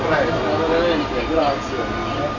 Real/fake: real